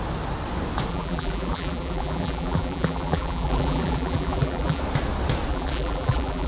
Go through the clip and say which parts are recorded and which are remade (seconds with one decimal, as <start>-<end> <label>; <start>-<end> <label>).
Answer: 0.0-0.9 recorded; 0.9-4.8 remade; 4.8-5.5 recorded; 5.5-6.5 remade